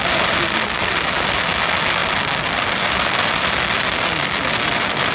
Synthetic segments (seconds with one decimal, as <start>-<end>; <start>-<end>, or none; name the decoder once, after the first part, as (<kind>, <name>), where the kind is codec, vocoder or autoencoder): none